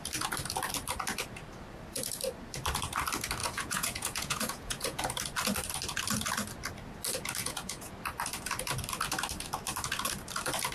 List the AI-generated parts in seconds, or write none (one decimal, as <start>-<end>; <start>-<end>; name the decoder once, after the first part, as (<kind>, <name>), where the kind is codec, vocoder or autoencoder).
3.4-5.0 (vocoder, Vocos); 7.4-7.9